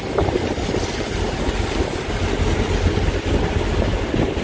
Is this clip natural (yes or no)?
yes